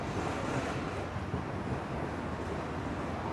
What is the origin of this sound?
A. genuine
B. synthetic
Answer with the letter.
A